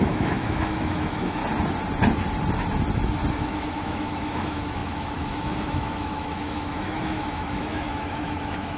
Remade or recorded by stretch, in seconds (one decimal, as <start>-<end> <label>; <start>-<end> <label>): 0.0-1.4 remade; 1.4-3.3 recorded; 3.3-8.8 remade